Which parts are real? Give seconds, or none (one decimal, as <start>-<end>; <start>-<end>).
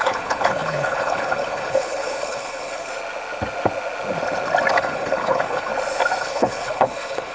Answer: 2.9-4.7; 5.7-6.2